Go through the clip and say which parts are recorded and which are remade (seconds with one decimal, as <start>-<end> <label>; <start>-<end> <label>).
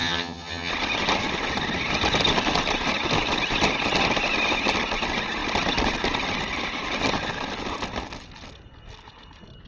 0.0-0.7 remade; 0.7-9.7 recorded